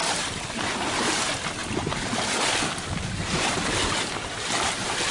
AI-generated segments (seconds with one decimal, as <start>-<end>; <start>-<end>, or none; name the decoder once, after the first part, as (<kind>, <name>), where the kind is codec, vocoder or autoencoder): 0.0-1.2 (vocoder, BigVGAN v2); 1.6-5.1